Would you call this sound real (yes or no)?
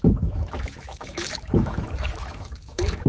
no